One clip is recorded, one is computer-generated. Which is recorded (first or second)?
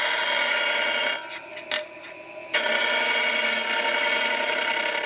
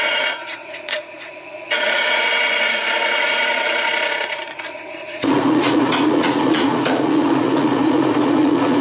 first